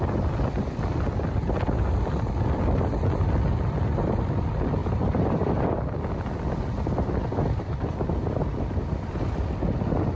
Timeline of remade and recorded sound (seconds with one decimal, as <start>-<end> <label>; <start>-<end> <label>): 0.0-4.8 recorded; 4.8-9.6 remade; 9.6-10.2 recorded

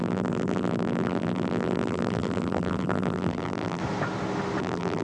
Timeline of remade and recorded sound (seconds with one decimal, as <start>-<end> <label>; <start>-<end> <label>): 0.0-3.8 remade; 3.8-4.6 recorded; 4.6-5.0 remade

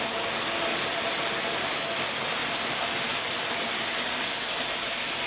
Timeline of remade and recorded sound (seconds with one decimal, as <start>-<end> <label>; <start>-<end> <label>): 0.0-0.7 recorded; 0.7-1.6 remade; 1.6-2.4 recorded; 2.4-4.2 remade; 4.2-5.3 recorded

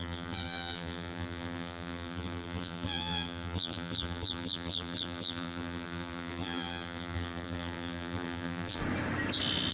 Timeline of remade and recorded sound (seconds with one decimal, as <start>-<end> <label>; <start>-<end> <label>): 0.0-8.8 remade; 8.8-9.7 recorded

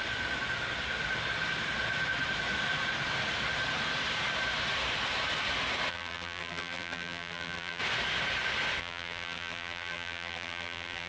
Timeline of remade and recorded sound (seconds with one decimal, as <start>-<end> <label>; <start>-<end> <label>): 0.0-5.9 recorded; 5.9-7.8 remade; 7.8-8.8 recorded; 8.8-11.1 remade

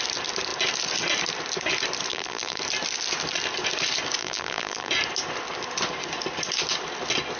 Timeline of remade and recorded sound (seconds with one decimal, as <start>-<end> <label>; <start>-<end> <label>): 0.0-2.1 recorded; 2.1-2.6 remade; 2.6-4.2 recorded; 4.2-4.9 remade; 4.9-7.4 recorded

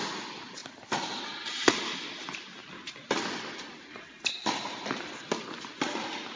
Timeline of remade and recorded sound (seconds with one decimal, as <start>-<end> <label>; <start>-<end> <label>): 0.0-6.4 recorded